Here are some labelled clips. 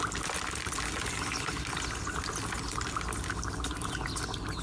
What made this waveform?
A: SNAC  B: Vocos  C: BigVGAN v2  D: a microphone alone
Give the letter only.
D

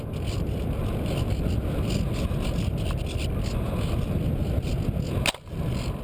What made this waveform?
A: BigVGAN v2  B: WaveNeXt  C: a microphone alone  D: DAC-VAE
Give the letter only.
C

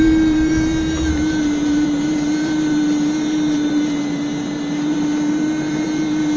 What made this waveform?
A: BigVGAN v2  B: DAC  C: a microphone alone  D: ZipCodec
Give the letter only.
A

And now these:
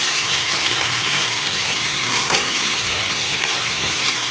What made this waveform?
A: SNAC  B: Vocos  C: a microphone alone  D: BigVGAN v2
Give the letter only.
A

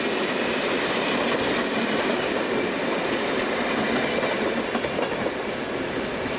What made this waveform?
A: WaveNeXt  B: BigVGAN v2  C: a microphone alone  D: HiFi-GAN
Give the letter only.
C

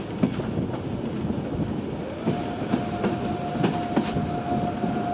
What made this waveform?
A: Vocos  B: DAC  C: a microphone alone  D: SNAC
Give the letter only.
C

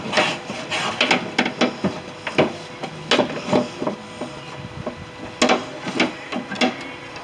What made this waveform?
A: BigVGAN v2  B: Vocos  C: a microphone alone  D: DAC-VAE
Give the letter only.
C